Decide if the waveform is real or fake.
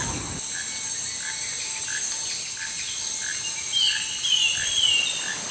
real